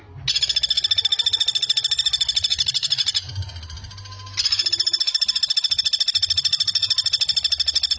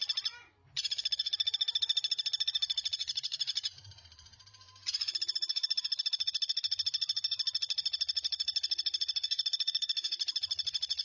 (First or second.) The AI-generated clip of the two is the second